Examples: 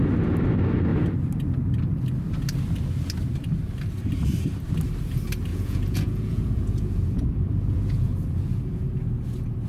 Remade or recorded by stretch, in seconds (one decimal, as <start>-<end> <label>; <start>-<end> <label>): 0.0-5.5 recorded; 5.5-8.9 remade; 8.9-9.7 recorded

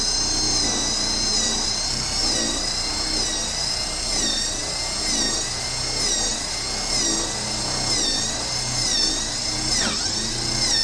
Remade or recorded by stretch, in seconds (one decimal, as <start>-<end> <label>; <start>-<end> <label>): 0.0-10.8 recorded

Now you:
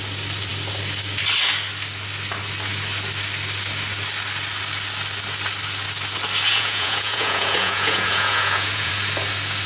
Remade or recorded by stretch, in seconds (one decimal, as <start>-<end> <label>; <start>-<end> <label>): 0.0-6.5 recorded; 6.5-8.9 remade; 8.9-9.7 recorded

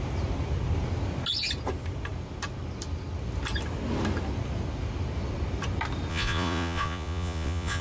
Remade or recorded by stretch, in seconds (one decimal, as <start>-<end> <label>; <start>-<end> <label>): 0.0-6.1 recorded; 6.1-7.8 remade